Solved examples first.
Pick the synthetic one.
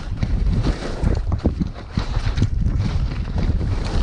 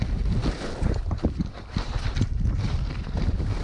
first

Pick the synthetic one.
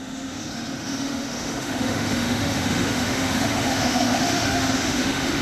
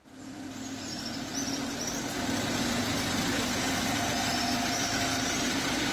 first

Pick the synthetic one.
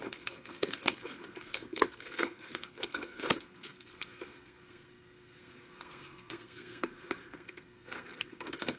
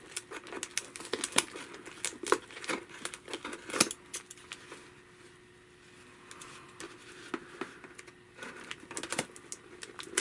first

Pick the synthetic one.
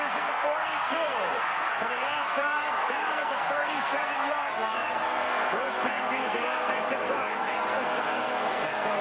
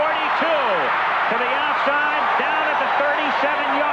first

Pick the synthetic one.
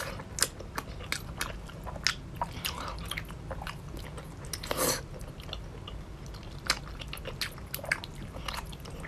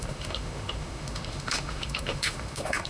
second